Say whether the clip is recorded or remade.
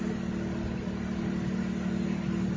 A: recorded